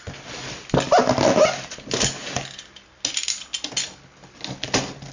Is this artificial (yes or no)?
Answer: no